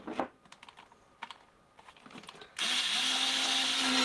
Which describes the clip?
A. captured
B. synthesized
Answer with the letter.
A